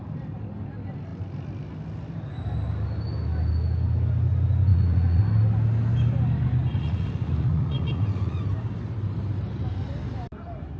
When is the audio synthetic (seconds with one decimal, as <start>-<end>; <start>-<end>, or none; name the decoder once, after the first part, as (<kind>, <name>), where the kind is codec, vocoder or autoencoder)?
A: 4.7-5.2 (vocoder, Vocos); 6.7-8.4